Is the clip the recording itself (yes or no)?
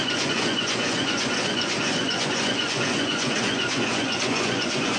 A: no